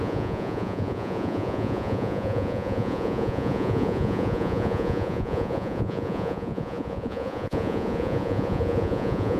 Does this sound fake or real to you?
fake